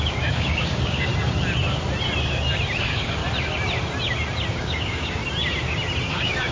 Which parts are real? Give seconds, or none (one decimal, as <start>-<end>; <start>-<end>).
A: 1.1-2.8; 3.2-4.5; 5.2-6.1